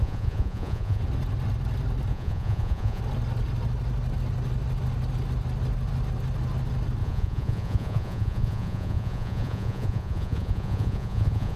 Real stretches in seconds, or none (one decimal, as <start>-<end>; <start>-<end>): 1.0-2.1; 3.0-7.0